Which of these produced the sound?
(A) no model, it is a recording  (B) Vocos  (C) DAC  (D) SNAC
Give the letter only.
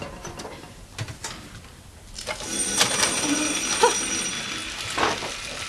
A